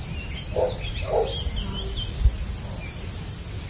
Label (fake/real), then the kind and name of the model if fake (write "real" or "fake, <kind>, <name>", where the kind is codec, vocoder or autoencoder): real